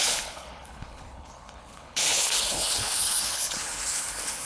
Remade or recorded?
remade